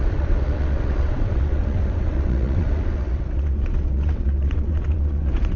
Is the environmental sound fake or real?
fake